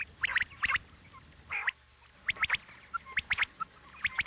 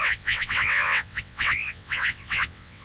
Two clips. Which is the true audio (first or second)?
first